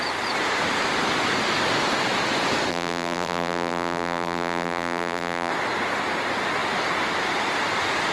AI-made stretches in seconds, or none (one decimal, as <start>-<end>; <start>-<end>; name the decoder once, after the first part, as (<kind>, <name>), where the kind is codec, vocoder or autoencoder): 2.7-5.5 (vocoder, BigVGAN v2)